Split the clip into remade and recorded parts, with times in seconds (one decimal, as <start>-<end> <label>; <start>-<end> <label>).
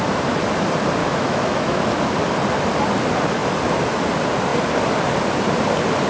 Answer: 0.0-1.0 recorded; 1.0-1.8 remade; 1.8-6.1 recorded